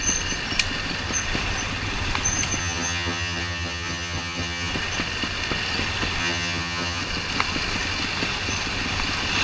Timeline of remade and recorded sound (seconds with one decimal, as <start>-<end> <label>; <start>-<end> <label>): 0.0-2.6 recorded; 2.6-4.7 remade; 4.7-6.2 recorded; 6.2-7.0 remade; 7.0-9.4 recorded